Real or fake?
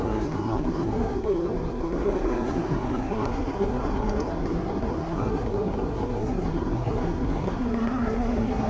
fake